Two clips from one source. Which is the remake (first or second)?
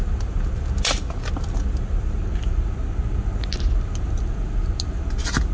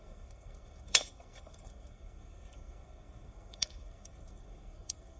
second